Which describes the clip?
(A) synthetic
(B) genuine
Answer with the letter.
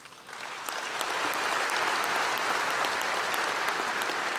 B